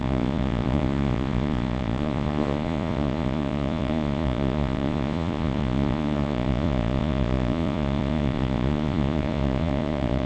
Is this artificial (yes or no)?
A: yes